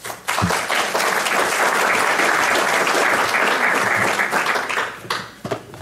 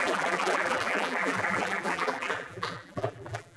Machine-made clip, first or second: second